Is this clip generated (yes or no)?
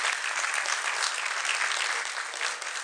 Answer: no